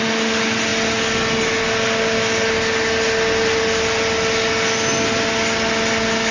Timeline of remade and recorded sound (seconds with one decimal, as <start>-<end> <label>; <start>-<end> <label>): 0.0-6.3 recorded